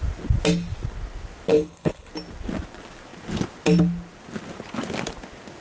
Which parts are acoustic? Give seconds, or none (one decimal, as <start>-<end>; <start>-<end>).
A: 0.0-1.5; 2.1-5.6

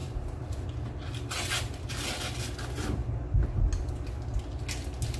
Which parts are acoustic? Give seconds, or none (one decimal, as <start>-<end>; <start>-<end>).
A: 0.6-5.2

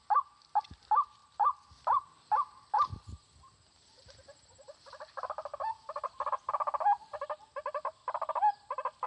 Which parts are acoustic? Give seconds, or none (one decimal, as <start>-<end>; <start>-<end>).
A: 0.0-8.0

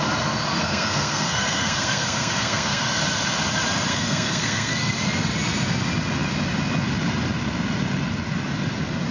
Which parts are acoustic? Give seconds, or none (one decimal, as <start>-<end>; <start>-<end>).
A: 0.0-0.6; 2.8-3.9; 4.9-9.1

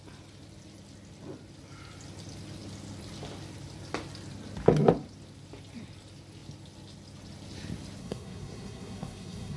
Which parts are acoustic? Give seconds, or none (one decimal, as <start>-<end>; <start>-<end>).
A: 0.0-8.0